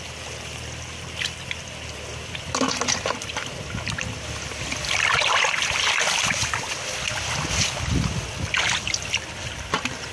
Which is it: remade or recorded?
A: recorded